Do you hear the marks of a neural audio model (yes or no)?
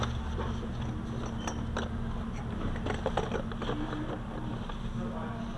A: no